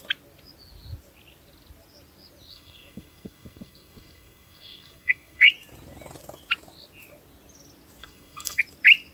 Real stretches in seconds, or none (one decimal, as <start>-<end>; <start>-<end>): 0.0-2.5; 5.5-8.0; 8.6-9.1